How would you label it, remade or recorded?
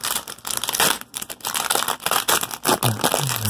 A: recorded